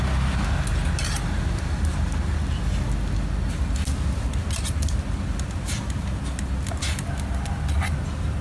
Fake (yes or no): no